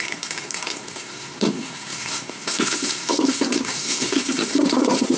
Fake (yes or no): yes